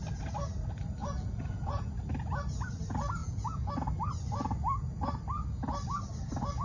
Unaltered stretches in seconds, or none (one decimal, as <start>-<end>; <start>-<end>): 0.0-1.0; 1.9-3.2; 3.7-6.6